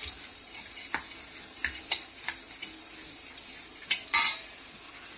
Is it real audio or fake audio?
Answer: real